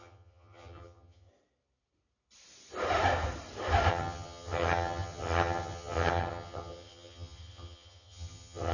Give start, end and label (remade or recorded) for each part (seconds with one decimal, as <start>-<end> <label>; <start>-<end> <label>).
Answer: 0.0-1.3 remade; 1.3-3.9 recorded; 3.9-8.7 remade